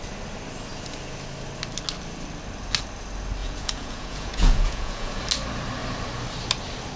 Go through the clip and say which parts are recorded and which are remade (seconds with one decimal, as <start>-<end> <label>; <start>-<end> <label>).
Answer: 0.0-3.4 recorded; 3.4-5.2 remade; 5.2-7.0 recorded